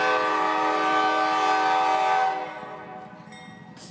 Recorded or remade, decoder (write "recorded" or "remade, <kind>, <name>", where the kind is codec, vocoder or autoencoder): recorded